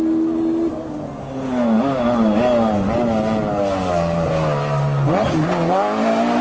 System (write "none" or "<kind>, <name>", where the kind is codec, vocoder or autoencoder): none